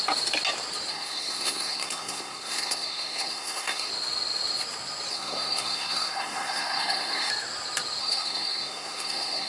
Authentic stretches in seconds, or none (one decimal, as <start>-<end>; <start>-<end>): 0.0-0.9; 3.9-5.1; 7.3-8.0